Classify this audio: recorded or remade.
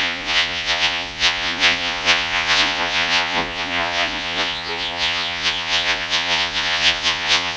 remade